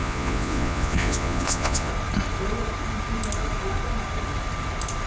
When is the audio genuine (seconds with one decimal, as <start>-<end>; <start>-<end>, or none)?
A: 1.9-5.1